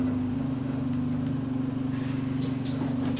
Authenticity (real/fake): real